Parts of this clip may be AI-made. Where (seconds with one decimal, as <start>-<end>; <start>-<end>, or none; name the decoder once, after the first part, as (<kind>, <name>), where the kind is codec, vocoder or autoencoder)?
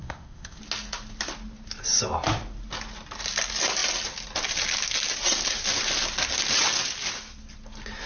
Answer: 0.0-0.6 (codec, ZipCodec)